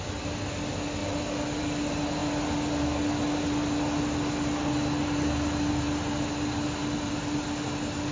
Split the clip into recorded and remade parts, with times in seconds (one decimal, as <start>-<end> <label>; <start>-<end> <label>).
0.0-8.1 recorded